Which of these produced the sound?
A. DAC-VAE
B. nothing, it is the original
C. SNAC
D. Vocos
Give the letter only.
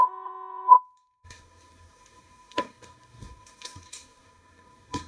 C